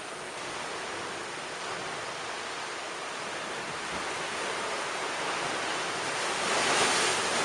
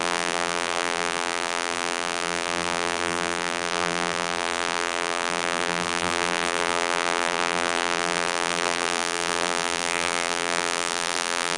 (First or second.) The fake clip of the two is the second